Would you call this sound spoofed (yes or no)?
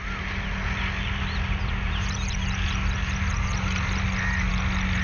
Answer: no